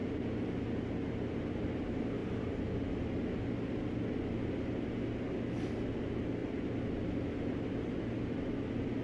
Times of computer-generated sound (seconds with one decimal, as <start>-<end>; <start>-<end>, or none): 6.4-7.7